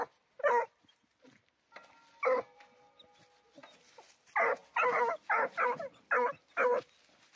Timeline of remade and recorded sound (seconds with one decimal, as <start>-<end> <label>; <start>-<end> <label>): 0.0-7.4 recorded